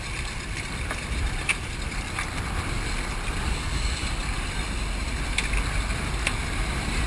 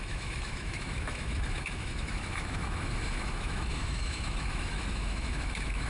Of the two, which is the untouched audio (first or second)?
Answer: first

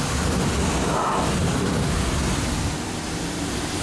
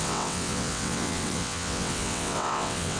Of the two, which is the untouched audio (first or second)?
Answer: first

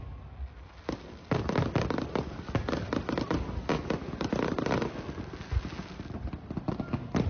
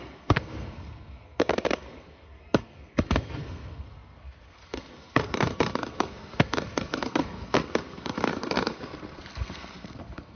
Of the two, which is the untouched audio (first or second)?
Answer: first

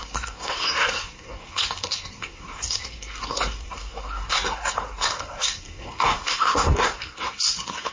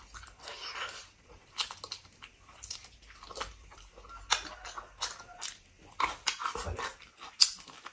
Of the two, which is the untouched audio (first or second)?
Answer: second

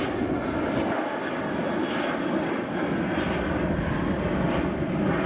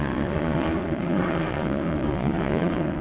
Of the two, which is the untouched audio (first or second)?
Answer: first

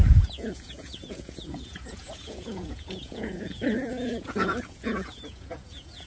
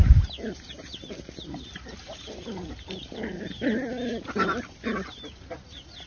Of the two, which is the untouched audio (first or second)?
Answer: second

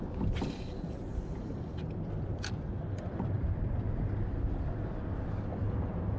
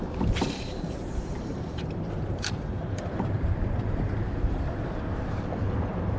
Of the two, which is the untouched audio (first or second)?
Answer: first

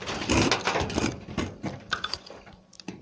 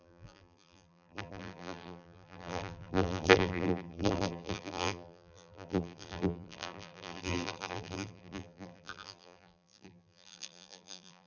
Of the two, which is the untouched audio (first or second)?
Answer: first